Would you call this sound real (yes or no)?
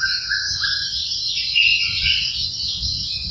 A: no